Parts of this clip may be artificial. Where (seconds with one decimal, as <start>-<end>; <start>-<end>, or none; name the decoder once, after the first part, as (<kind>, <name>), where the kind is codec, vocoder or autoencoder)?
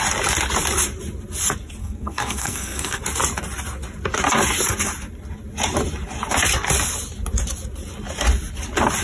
1.8-3.0 (codec, SNAC)